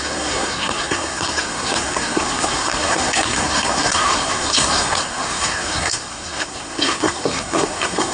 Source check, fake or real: fake